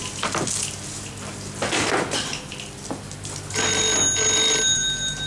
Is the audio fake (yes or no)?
no